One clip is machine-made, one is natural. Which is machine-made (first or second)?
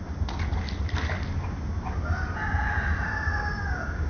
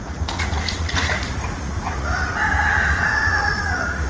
second